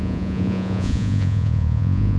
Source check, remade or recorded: remade